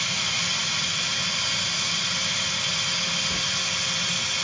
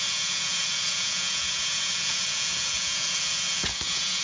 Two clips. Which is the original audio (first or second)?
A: first